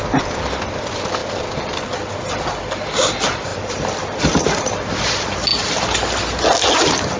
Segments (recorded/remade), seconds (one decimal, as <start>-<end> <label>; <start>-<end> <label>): 0.0-1.2 recorded; 1.2-2.2 remade; 2.2-3.5 recorded; 3.5-4.9 remade; 4.9-7.2 recorded